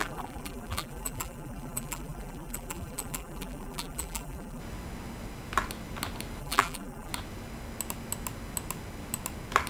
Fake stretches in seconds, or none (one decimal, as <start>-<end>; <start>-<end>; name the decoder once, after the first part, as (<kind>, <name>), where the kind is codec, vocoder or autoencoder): 0.0-4.6 (vocoder, BigVGAN v2); 6.4-7.1